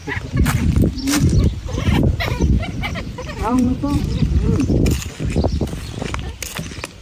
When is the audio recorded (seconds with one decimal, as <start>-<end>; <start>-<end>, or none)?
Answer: 2.5-2.9; 5.4-7.0